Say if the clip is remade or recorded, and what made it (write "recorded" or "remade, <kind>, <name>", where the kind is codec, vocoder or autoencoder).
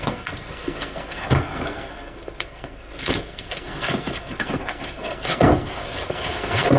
remade, codec, SNAC